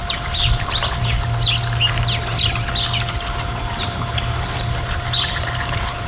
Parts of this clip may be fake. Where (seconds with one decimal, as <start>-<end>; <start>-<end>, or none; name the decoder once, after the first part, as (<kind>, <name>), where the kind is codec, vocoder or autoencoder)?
0.0-1.0 (vocoder, BigVGAN v2); 3.5-6.1